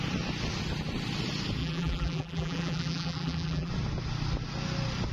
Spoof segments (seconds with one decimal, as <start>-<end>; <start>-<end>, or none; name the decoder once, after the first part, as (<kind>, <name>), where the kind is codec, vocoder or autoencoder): 1.6-3.7 (vocoder, BigVGAN v2)